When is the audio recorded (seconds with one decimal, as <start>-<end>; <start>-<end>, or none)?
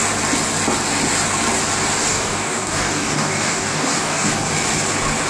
0.0-2.1; 4.5-5.3